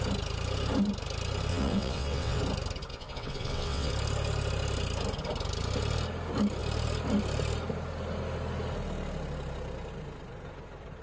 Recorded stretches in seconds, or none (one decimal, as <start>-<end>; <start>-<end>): 0.0-1.5; 2.4-2.9; 3.9-11.0